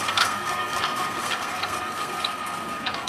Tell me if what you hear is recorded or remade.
remade